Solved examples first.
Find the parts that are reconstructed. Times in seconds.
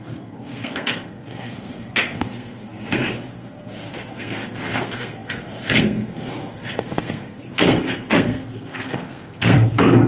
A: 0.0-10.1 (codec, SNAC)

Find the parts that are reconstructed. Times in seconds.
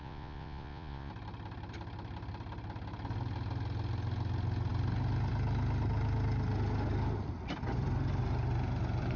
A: 0.0-1.1 (vocoder, Vocos)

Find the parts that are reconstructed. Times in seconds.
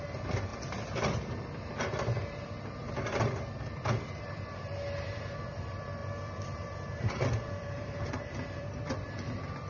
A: 0.0-0.5 (vocoder, BigVGAN v2); 1.0-9.7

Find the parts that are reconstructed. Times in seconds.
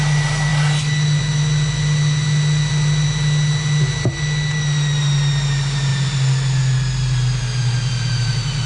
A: none